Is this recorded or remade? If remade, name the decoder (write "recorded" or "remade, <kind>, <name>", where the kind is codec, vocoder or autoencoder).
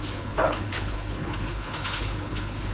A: remade, codec, HILCodec